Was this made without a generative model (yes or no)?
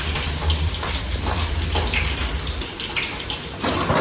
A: no